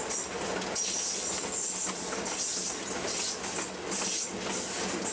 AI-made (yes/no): no